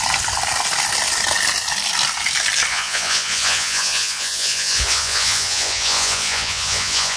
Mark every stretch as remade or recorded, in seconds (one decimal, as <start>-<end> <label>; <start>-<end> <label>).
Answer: 0.0-2.7 recorded; 2.7-7.2 remade